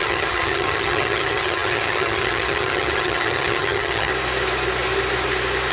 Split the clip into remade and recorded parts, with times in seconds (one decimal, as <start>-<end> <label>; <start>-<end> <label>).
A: 0.0-4.1 remade; 4.1-5.7 recorded